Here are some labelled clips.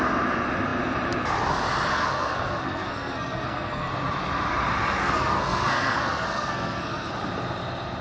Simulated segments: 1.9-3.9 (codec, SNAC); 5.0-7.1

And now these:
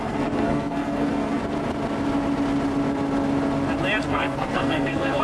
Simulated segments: 0.0-1.4 (codec, SNAC); 4.0-5.2